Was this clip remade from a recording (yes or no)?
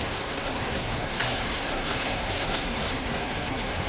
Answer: yes